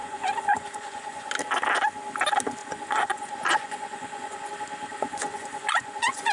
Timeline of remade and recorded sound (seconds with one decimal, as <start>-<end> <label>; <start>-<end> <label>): 0.0-1.3 remade; 1.3-2.6 recorded; 2.6-4.5 remade; 4.5-4.9 recorded; 4.9-6.3 remade